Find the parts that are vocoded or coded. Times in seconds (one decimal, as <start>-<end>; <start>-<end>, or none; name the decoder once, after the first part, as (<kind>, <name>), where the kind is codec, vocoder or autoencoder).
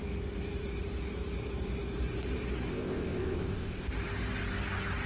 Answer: 2.7-3.9 (codec, ZipCodec)